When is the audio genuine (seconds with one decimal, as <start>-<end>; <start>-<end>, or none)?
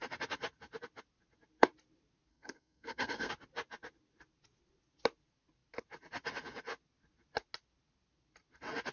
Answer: 0.0-2.3; 3.3-8.9